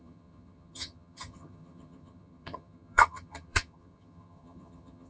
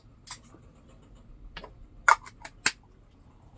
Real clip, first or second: second